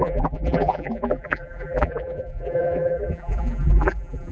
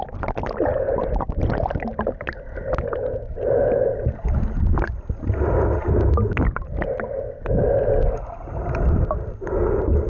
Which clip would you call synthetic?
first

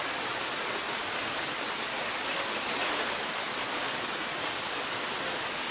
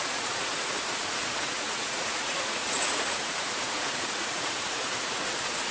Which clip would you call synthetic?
second